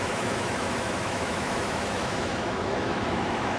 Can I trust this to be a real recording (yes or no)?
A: no